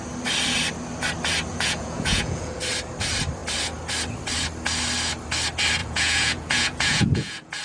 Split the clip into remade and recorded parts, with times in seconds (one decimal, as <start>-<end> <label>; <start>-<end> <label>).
0.0-1.5 recorded; 1.5-2.6 remade; 2.6-5.8 recorded; 5.8-7.6 remade